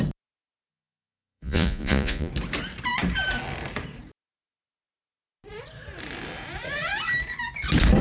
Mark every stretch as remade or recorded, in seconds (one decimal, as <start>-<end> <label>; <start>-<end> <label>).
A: 0.0-0.7 recorded; 0.7-2.3 remade; 2.3-8.0 recorded